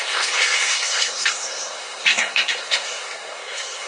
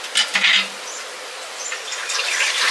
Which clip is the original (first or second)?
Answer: second